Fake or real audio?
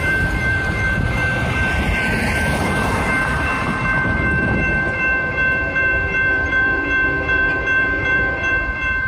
fake